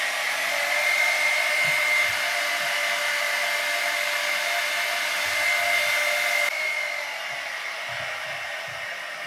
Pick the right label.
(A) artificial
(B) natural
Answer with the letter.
B